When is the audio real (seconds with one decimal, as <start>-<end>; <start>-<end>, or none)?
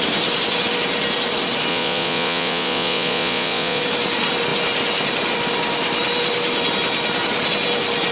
0.0-1.7; 3.8-8.1